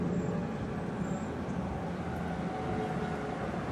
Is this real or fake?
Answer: real